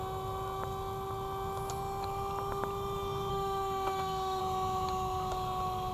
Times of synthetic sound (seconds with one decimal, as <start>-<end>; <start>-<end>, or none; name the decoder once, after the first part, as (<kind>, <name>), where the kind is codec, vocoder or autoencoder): 3.3-4.4 (autoencoder, DAC-VAE)